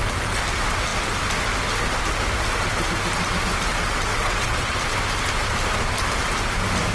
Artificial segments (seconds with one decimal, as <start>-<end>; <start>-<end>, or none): 4.1-4.7